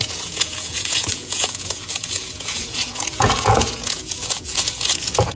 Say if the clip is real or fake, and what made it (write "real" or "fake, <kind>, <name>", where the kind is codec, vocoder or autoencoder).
fake, vocoder, Vocos